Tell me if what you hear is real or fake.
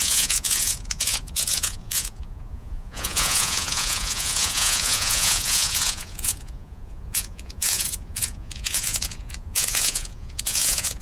fake